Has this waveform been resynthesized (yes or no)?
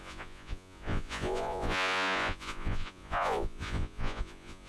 yes